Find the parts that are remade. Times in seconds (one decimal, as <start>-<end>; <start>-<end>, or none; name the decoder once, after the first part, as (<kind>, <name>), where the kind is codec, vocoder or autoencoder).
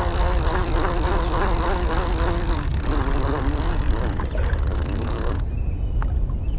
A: 4.7-5.4 (autoencoder, DAC-VAE)